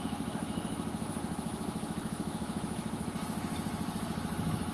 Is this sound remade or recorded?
remade